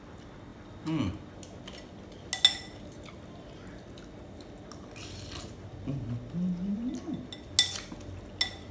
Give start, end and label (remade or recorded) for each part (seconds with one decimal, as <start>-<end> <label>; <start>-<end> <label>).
0.0-8.7 recorded